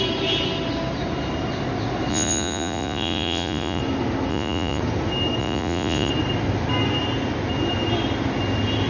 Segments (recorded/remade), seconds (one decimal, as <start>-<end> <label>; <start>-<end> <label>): 0.0-2.1 recorded; 2.1-3.8 remade; 3.8-4.3 recorded; 4.3-4.8 remade; 4.8-5.4 recorded; 5.4-6.1 remade; 6.1-8.9 recorded